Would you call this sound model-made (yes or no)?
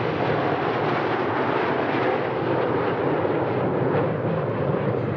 no